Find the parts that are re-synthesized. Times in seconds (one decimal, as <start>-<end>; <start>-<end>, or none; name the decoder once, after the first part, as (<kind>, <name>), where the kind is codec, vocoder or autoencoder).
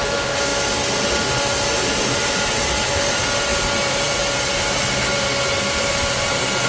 3.5-4.2 (vocoder, BigVGAN v2)